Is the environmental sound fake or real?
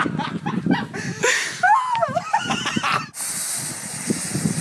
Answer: real